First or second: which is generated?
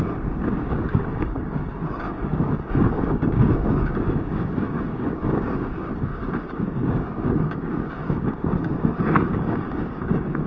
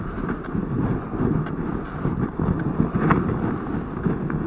first